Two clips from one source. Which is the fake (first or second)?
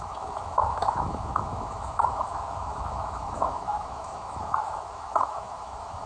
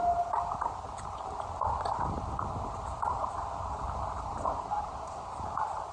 first